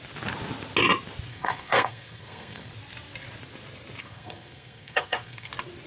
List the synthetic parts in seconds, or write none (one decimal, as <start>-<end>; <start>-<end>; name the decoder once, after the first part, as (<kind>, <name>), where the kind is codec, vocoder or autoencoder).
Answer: 1.3-2.7 (codec, SNAC); 4.0-5.5